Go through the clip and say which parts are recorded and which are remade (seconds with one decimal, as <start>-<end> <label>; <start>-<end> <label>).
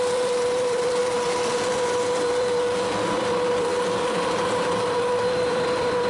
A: 0.0-3.7 remade; 3.7-4.4 recorded; 4.4-6.1 remade